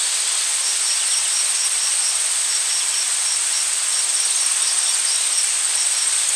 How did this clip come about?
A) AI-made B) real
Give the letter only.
B